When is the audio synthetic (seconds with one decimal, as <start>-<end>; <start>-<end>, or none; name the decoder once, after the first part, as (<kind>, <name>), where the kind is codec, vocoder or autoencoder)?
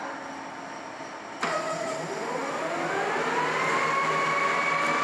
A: none